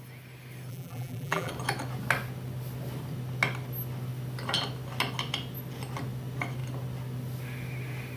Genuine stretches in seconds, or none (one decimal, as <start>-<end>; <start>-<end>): 0.0-0.7; 1.5-8.2